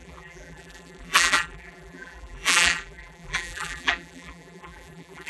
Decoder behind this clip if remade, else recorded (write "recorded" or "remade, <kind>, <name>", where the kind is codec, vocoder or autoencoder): remade, vocoder, BigVGAN v2